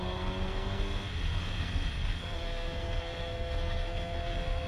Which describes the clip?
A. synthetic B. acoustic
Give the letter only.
A